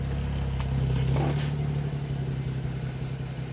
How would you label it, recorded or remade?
recorded